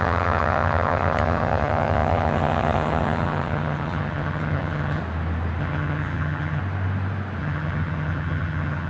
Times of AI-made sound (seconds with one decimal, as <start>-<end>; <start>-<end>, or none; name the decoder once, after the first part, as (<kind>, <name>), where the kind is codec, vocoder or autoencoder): 0.0-5.0 (vocoder, HiFi-GAN); 5.6-6.6; 7.4-8.9